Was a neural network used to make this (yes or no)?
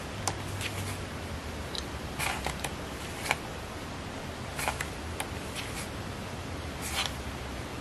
no